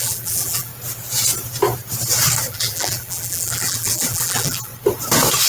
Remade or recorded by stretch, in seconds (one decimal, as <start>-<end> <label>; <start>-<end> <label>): 0.0-0.7 remade; 0.7-2.5 recorded; 2.5-4.7 remade; 4.7-5.5 recorded